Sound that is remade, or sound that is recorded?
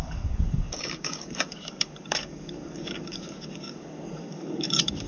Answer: remade